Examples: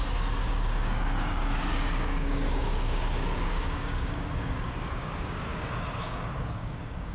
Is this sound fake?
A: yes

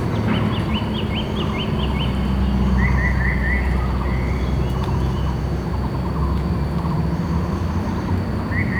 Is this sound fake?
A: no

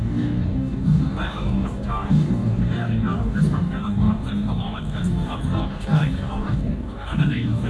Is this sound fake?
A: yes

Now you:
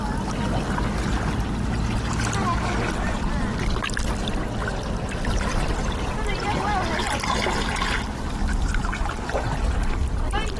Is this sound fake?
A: no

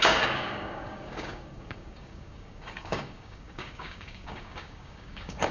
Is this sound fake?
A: yes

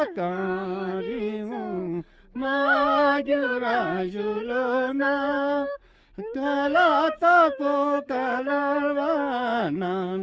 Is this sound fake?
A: yes